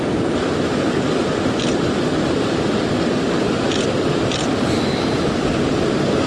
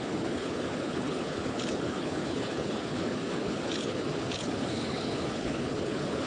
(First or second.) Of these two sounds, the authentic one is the first